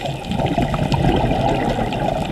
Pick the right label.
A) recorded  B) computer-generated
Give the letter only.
A